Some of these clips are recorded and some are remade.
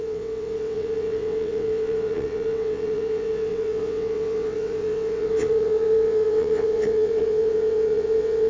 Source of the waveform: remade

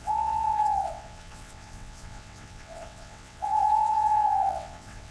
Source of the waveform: remade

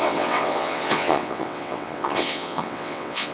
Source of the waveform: remade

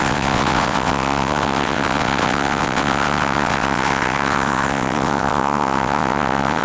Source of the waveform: remade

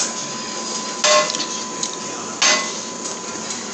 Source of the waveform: recorded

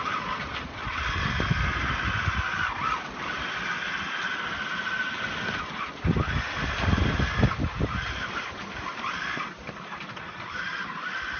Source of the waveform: recorded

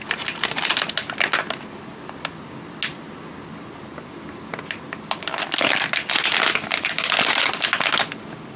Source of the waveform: recorded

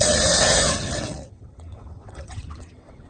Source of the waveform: remade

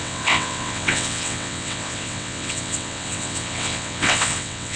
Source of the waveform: remade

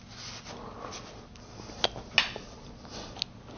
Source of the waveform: recorded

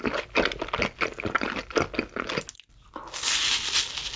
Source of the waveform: recorded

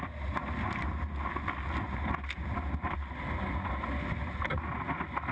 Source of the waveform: recorded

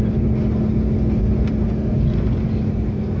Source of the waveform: recorded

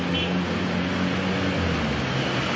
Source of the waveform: recorded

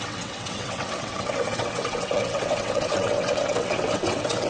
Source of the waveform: remade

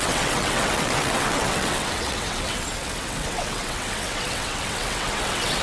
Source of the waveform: remade